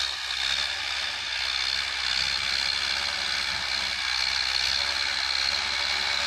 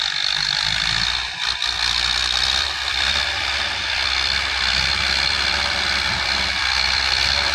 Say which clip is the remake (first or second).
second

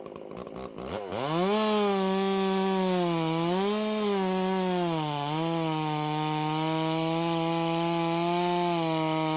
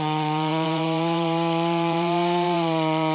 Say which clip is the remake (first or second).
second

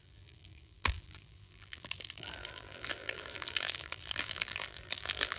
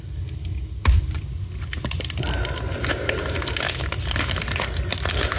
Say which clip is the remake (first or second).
first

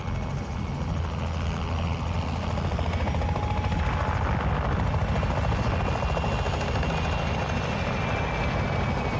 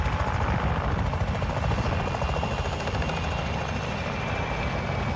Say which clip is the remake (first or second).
second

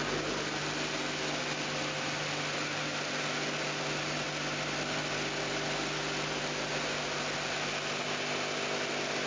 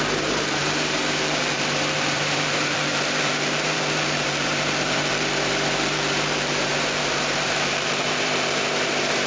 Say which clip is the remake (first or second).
second